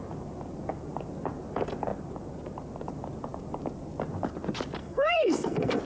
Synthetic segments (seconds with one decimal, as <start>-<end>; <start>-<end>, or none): 4.8-5.8